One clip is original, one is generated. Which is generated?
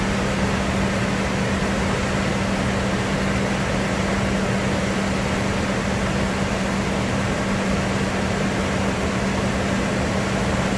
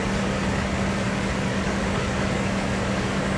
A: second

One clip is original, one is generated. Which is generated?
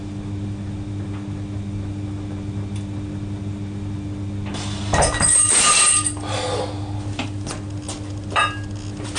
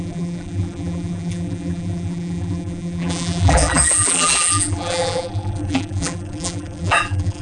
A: second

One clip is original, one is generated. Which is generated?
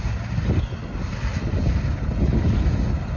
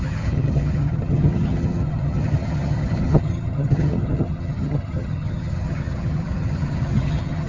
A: second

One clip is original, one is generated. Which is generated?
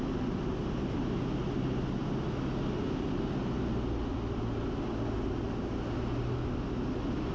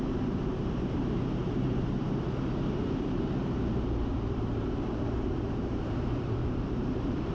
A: second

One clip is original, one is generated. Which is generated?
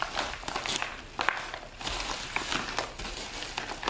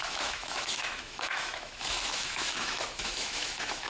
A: second